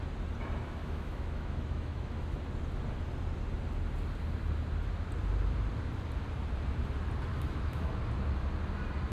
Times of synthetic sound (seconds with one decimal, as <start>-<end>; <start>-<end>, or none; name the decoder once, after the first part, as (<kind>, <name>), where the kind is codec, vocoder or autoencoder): 0.8-2.4 (autoencoder, DAC-VAE); 7.3-7.9